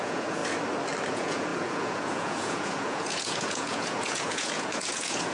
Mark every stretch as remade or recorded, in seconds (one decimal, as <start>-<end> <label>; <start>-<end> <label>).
0.0-0.4 remade; 0.4-1.1 recorded; 1.1-5.3 remade